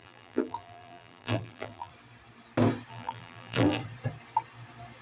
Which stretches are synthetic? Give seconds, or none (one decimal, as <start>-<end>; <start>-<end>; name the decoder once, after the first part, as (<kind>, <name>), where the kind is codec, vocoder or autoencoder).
0.0-1.9 (vocoder, BigVGAN v2); 2.9-3.8